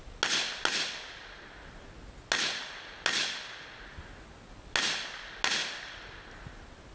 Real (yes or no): yes